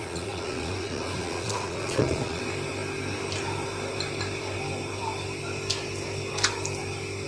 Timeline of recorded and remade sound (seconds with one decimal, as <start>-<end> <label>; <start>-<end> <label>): 0.0-2.4 remade; 2.4-7.3 recorded